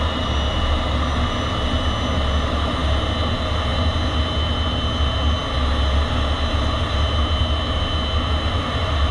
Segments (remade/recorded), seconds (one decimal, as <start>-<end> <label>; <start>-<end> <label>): 0.0-9.1 recorded